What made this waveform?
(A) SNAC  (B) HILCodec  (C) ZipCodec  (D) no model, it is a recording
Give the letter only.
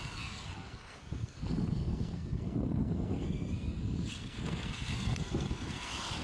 A